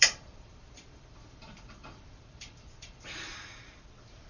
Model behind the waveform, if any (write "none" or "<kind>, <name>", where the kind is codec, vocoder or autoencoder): vocoder, BigVGAN v2